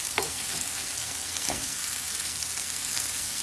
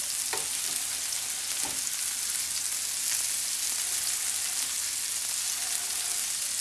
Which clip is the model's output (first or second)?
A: first